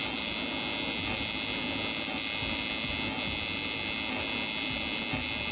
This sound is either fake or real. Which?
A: real